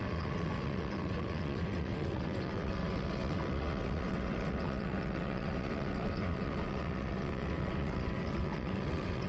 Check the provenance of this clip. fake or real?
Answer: fake